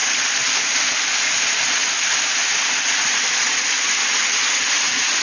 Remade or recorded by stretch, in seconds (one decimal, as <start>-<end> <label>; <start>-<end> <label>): 0.0-5.2 recorded